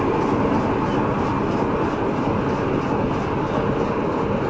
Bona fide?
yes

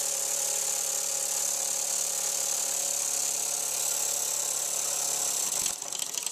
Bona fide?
yes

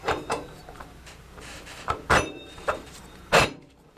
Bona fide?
no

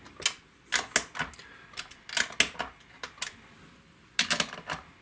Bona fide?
yes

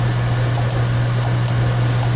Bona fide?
yes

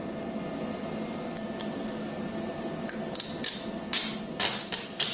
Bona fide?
yes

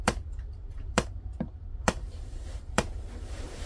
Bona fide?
no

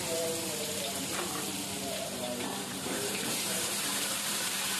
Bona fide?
no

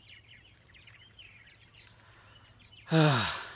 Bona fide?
no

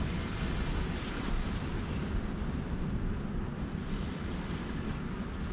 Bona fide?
yes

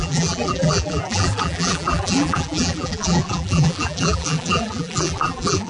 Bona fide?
no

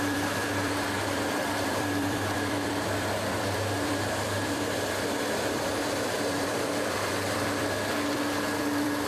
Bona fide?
no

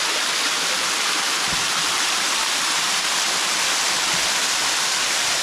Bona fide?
no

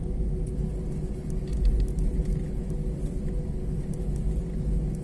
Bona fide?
yes